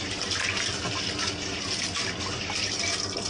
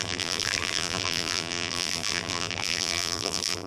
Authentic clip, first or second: first